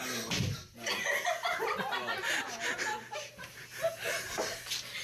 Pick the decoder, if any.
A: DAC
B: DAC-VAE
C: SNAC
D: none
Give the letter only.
D